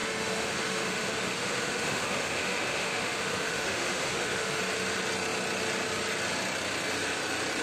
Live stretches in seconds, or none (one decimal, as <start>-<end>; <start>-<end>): 4.6-7.6